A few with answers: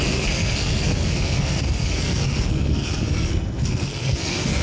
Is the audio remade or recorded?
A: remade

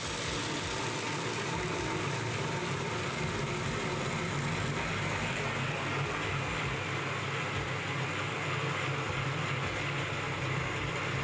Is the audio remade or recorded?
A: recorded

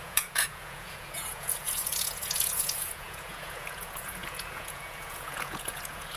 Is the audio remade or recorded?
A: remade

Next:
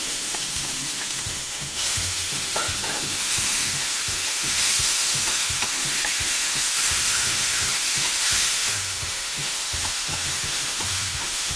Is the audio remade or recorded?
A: remade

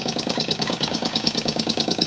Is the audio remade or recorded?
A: remade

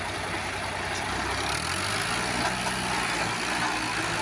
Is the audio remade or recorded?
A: recorded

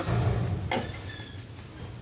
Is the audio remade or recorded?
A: recorded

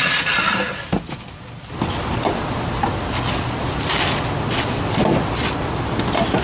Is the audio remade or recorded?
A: recorded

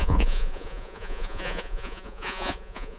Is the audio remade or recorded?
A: remade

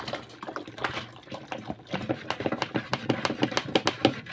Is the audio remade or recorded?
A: recorded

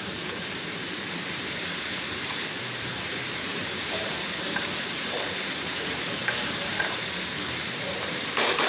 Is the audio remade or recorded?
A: remade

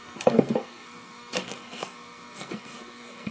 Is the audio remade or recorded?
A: remade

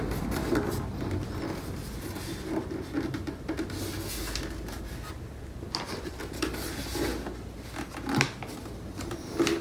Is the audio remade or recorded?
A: recorded